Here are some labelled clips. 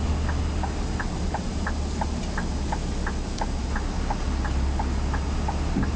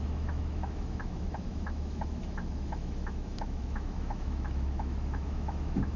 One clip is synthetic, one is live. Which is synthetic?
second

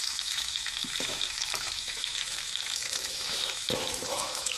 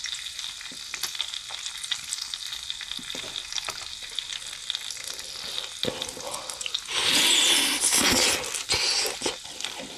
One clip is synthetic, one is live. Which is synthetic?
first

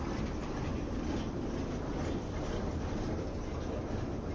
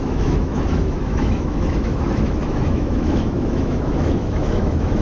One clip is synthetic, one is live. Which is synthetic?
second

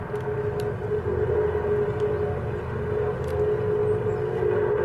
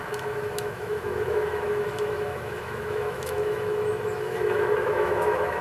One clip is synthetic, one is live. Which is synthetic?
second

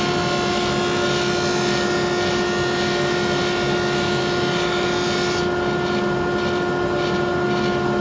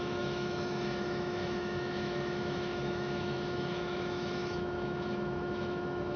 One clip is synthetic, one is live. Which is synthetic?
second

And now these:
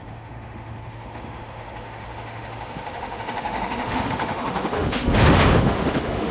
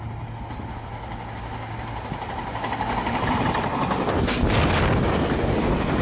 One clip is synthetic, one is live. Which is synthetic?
first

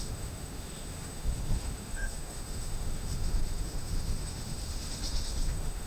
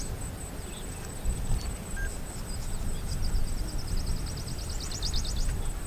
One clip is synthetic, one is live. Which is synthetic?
first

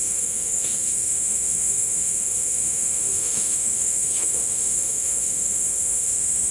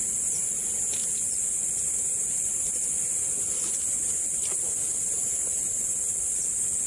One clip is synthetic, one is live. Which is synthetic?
first